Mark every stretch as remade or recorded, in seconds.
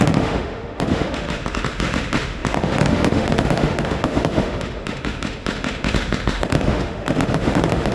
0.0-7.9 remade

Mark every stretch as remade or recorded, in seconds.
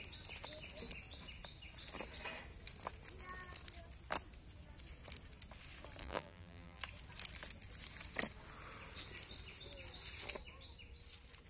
0.0-6.0 recorded; 6.0-6.8 remade; 6.8-11.5 recorded